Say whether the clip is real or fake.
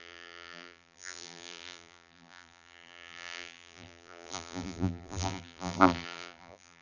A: fake